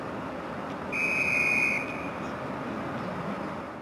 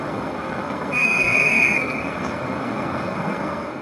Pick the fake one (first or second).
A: second